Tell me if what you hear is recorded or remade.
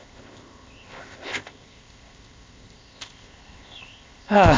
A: remade